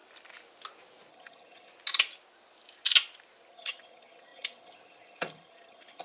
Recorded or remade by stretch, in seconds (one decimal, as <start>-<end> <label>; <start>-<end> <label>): 0.0-1.1 recorded; 1.1-1.7 remade; 1.7-3.5 recorded; 3.5-6.0 remade